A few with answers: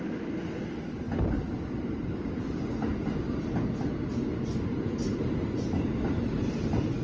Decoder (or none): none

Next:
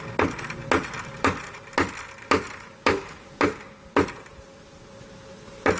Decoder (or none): none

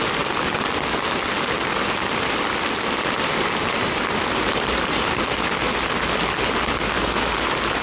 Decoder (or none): none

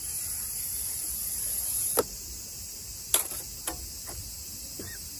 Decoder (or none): none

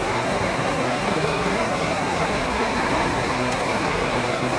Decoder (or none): codec, SNAC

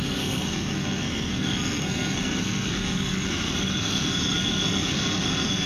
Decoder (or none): codec, SNAC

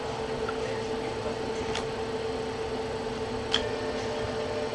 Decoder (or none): none